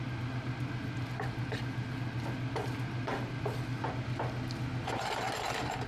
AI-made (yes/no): no